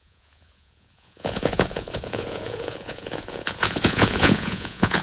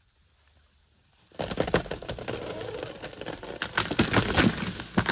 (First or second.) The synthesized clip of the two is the first